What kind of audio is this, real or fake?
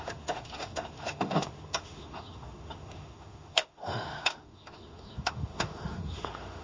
fake